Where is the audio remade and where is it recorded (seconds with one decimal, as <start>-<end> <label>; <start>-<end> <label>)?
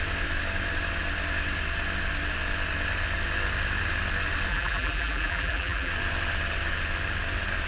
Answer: 0.0-4.5 recorded; 4.5-5.9 remade; 5.9-7.7 recorded